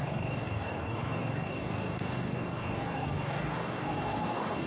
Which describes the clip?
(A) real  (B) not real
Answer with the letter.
B